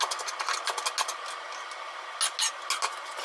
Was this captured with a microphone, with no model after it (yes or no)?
yes